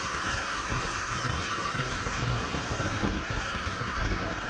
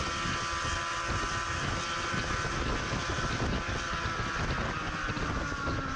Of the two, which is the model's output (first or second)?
first